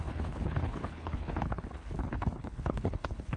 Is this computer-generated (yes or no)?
yes